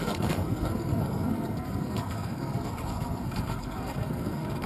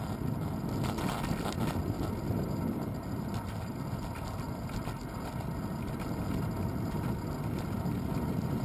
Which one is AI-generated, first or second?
first